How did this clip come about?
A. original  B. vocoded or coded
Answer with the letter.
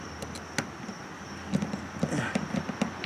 A